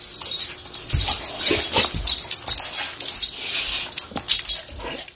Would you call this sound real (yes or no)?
yes